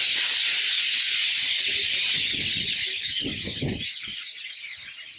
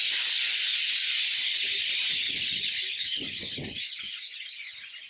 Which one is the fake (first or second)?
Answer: second